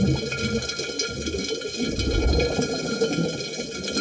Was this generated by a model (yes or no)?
no